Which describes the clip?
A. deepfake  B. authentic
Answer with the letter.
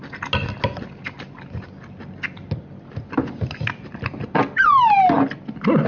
B